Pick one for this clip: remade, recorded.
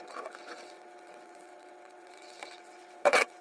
remade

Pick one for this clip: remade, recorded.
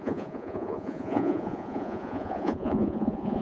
remade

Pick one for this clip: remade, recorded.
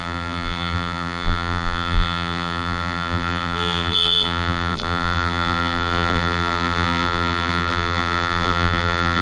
remade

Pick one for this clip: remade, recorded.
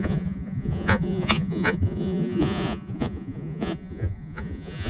remade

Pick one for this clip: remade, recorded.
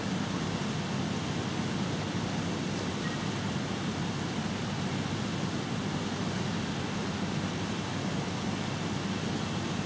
recorded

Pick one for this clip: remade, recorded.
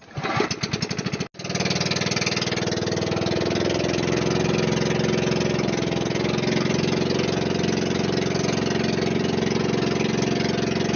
recorded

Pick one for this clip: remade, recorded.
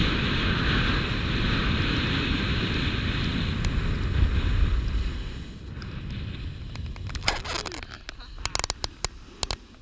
recorded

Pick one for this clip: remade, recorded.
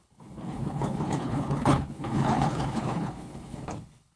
remade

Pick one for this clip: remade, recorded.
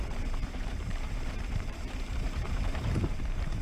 remade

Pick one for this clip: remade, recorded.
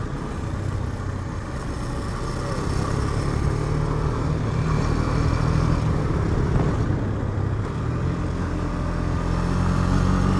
recorded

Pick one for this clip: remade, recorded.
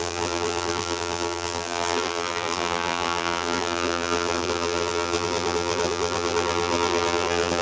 remade